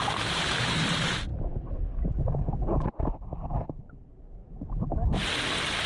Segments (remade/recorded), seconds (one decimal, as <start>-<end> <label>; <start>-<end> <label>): 0.0-1.3 remade; 1.3-3.5 recorded; 3.5-4.4 remade; 4.4-5.9 recorded